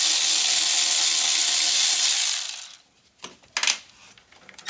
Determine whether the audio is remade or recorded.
recorded